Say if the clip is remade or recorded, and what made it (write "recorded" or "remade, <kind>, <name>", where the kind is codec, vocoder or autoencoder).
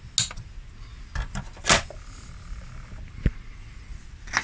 recorded